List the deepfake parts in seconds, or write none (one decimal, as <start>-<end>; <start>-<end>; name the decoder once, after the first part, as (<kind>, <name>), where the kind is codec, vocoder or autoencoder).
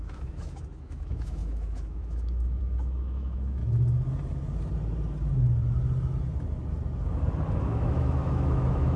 0.0-3.6 (autoencoder, DAC-VAE); 7.6-9.0